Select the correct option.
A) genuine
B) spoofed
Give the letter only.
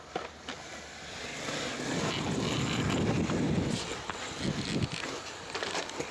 A